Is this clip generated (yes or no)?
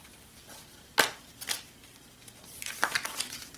no